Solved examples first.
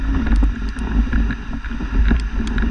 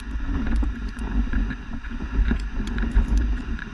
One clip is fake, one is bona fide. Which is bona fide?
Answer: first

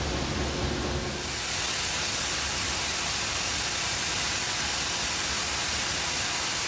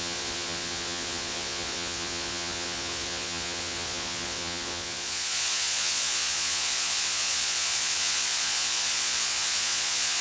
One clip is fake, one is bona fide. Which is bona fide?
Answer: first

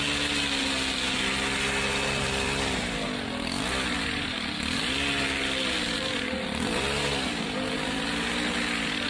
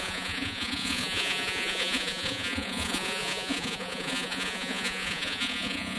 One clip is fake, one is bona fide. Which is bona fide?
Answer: first